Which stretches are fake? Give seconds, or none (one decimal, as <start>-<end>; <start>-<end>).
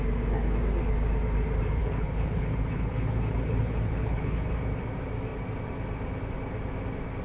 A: 1.8-4.5